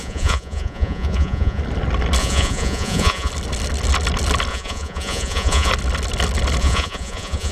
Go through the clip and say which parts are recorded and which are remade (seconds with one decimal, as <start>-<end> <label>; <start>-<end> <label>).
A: 0.0-1.6 remade; 1.6-2.2 recorded; 2.2-3.3 remade; 3.3-4.5 recorded; 4.5-5.7 remade; 5.7-6.6 recorded; 6.6-7.5 remade